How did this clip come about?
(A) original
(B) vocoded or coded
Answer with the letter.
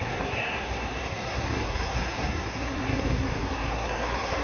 B